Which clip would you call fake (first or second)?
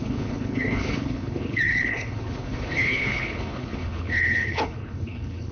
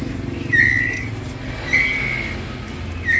first